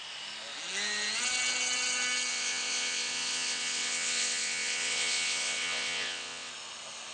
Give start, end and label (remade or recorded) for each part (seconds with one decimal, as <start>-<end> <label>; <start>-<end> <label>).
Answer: 0.0-2.3 recorded; 2.3-6.5 remade; 6.5-7.1 recorded